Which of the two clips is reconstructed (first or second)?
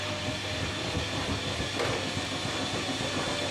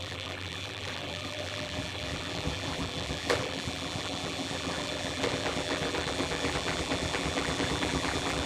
second